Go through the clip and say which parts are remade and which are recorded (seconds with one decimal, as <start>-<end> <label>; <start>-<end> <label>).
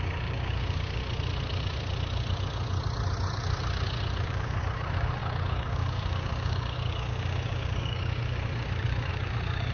0.0-1.0 remade; 1.0-4.2 recorded; 4.2-9.7 remade